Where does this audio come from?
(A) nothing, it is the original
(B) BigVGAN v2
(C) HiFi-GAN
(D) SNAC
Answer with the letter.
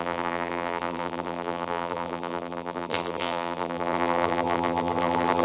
B